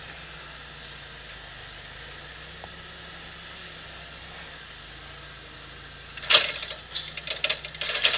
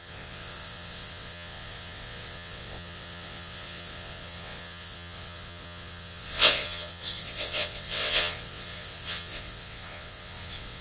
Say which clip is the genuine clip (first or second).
first